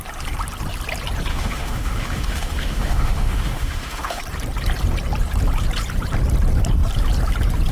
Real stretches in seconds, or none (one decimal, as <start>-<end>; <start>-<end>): 0.0-1.3; 4.2-7.7